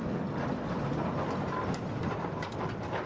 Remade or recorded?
recorded